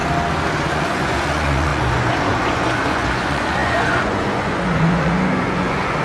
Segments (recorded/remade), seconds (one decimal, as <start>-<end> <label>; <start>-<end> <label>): 0.0-0.6 recorded; 0.6-6.0 remade